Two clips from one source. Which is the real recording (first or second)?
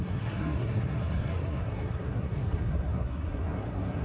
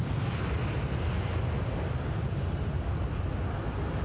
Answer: second